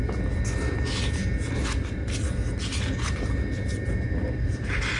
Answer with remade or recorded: recorded